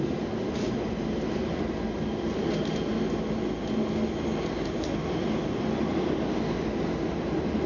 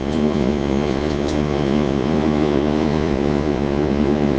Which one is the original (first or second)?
first